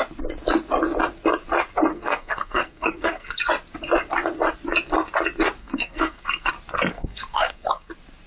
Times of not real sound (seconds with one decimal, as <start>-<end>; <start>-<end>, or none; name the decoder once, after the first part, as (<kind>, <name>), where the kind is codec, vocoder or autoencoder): 1.9-3.4 (codec, SNAC); 5.6-6.5; 6.9-7.9